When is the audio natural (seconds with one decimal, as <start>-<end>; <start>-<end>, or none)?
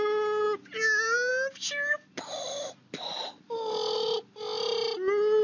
0.0-5.4